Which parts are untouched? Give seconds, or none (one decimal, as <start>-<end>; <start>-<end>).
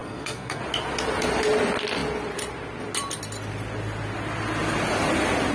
0.6-5.5